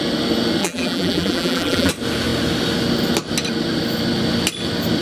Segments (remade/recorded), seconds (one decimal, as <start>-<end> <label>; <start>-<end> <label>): 0.0-0.6 recorded; 0.6-1.9 remade; 1.9-5.0 recorded